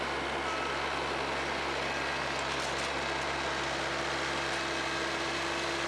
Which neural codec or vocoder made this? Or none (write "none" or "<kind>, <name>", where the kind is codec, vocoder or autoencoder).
none